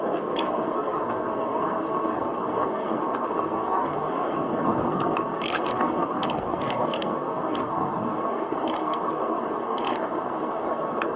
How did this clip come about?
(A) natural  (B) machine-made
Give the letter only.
B